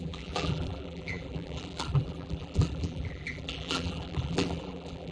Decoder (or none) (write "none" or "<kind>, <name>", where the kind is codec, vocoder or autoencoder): vocoder, BigVGAN v2